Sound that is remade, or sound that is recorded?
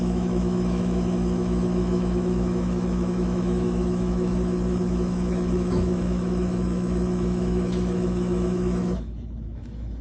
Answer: remade